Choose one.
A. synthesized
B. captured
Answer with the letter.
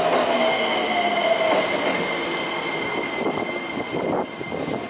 B